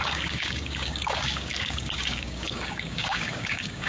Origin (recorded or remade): remade